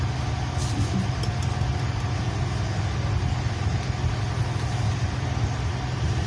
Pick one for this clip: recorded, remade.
recorded